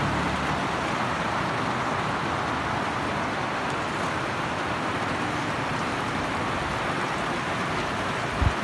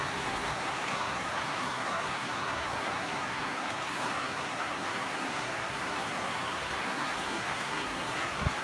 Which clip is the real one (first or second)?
first